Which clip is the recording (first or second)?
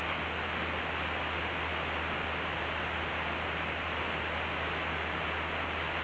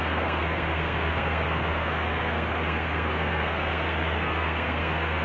first